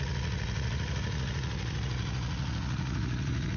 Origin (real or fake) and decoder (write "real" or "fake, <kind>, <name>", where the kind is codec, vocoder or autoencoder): fake, vocoder, Vocos